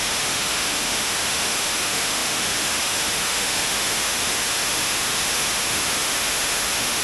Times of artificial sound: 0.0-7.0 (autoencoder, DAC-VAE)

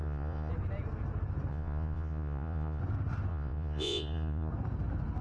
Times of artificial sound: 0.0-0.5 (vocoder, Vocos); 1.5-2.8; 3.3-4.5

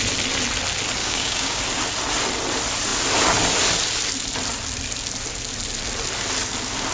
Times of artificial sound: 1.0-1.6 (codec, DAC)

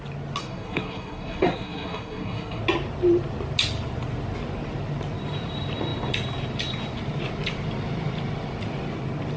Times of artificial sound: 0.4-2.6 (codec, SNAC)

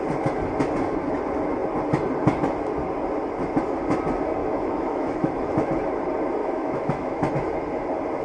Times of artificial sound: 4.4-5.7 (autoencoder, DAC-VAE); 6.4-7.3

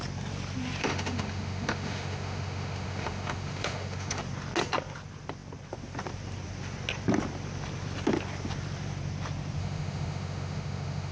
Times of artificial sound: 0.8-4.2 (autoencoder, DAC-VAE); 9.6-11.1

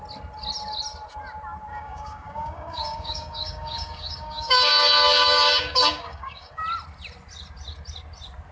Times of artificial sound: 1.7-4.7 (codec, DAC); 5.2-6.6